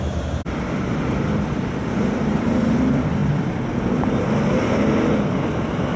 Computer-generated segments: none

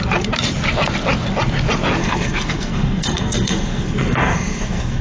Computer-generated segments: 2.0-5.0 (codec, SNAC)

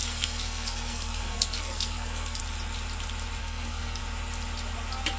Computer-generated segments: 0.0-2.4 (codec, SNAC); 3.4-4.0

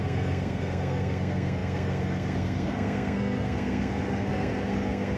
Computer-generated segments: 0.0-5.2 (codec, SNAC)

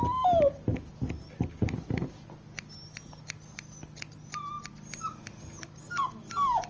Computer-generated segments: none